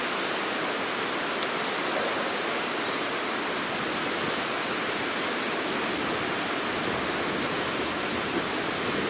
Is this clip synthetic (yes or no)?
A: no